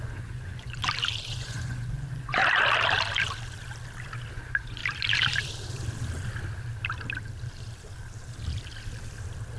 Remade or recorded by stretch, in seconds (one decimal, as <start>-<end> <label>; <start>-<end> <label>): 0.0-0.8 remade; 0.8-1.3 recorded; 1.3-2.4 remade; 2.4-4.3 recorded; 4.3-4.8 remade; 4.8-9.6 recorded

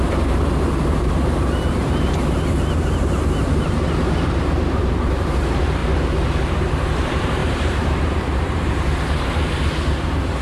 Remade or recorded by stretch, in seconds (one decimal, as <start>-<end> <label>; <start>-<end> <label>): 0.0-5.8 remade; 5.8-6.5 recorded; 6.5-10.4 remade

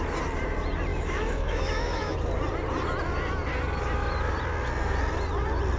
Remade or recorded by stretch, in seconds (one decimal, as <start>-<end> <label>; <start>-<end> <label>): 0.0-0.9 recorded; 0.9-2.2 remade; 2.2-5.8 recorded

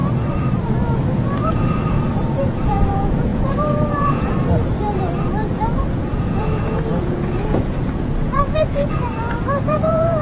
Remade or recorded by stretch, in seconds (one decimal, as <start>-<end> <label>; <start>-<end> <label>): 0.0-1.2 recorded; 1.2-10.2 remade

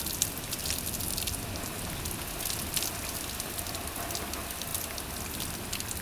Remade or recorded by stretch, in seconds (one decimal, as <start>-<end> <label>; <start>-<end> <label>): 0.0-6.0 recorded